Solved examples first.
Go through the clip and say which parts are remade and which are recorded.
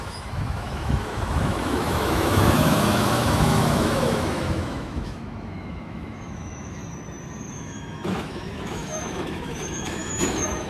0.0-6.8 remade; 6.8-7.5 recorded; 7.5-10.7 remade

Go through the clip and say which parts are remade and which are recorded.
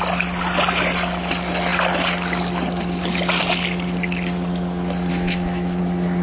0.0-5.1 recorded; 5.1-5.8 remade; 5.8-6.2 recorded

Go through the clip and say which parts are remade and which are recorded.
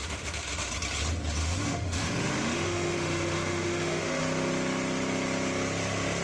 0.0-0.7 remade; 0.7-1.4 recorded; 1.4-4.2 remade; 4.2-6.2 recorded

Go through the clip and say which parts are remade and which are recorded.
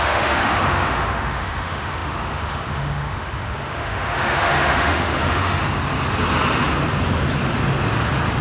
0.0-5.6 remade; 5.6-8.4 recorded